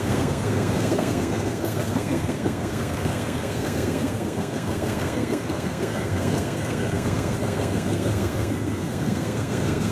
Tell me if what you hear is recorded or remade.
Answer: remade